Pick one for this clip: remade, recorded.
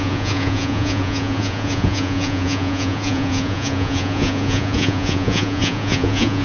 remade